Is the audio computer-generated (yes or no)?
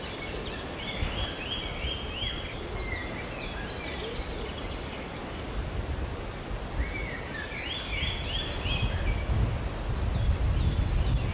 no